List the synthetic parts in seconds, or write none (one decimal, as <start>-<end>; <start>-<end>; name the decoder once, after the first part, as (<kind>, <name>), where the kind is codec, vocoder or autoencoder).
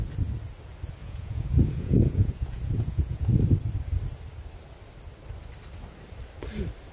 1.0-3.3 (vocoder, Vocos)